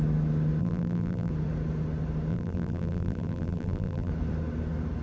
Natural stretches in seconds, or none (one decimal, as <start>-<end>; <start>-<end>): 0.0-0.6; 1.3-2.3; 4.1-5.0